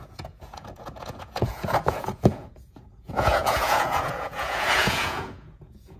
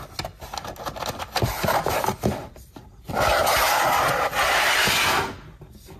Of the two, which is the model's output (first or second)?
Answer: first